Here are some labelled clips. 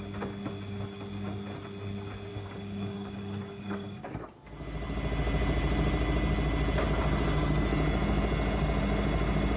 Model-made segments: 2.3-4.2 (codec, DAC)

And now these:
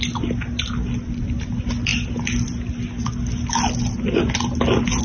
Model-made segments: none

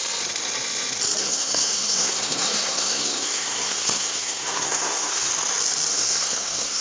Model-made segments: 1.2-5.3 (codec, SNAC); 5.9-6.8

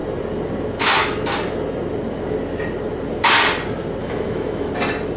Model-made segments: 4.0-4.7 (autoencoder, DAC-VAE)

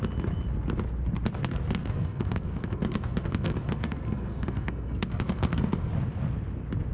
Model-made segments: 1.8-5.9 (codec, SNAC)

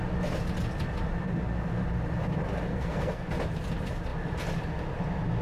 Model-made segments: 2.7-3.3 (codec, SNAC)

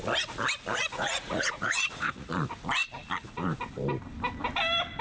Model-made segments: 0.8-2.3 (vocoder, Vocos)